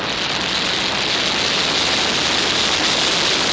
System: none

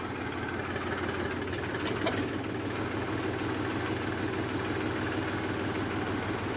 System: none